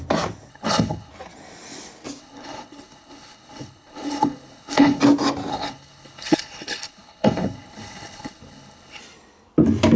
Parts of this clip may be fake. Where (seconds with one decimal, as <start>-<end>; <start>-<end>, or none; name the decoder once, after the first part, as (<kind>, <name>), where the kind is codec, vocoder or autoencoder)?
0.5-1.1 (codec, HILCodec); 2.2-5.0; 5.5-9.0

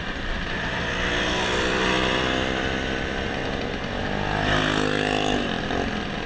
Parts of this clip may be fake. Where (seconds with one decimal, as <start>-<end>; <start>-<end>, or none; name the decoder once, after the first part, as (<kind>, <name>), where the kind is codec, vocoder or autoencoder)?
none

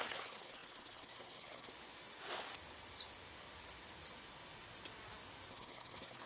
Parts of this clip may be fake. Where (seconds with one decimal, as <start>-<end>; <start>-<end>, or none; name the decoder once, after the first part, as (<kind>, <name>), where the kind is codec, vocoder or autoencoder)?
0.0-1.7 (codec, SNAC); 5.5-6.3

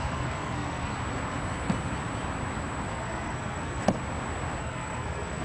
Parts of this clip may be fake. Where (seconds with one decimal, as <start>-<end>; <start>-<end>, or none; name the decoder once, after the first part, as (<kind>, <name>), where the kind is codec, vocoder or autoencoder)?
0.0-0.9 (codec, SNAC); 2.9-3.8; 4.6-5.4

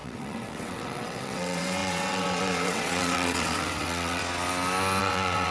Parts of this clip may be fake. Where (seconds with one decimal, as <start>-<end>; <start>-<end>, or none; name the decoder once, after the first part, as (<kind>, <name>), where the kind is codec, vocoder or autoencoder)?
0.0-4.2 (vocoder, WaveNeXt); 5.0-5.5

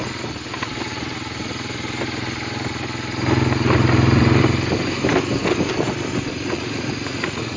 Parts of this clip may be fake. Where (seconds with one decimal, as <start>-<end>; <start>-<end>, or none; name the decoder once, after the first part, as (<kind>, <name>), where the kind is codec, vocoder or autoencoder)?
6.3-7.6 (vocoder, Vocos)

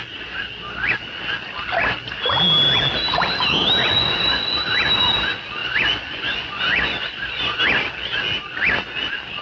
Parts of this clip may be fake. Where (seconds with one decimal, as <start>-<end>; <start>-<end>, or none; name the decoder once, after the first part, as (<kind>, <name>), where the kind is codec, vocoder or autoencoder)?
3.8-4.6 (vocoder, Vocos); 5.6-7.6

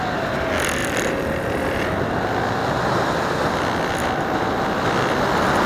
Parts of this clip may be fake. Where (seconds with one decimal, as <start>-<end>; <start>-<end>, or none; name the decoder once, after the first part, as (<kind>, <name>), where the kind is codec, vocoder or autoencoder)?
none